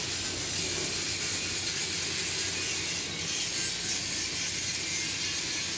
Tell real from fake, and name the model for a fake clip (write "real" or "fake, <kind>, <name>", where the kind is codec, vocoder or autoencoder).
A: real